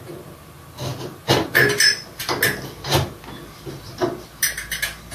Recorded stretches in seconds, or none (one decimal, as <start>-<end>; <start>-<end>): 0.0-5.1